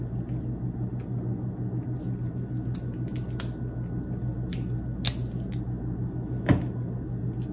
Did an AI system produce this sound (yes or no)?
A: no